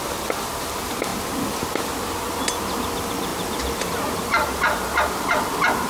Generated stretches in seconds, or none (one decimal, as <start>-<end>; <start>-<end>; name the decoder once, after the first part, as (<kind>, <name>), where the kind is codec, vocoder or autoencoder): 3.3-4.6 (vocoder, BigVGAN v2)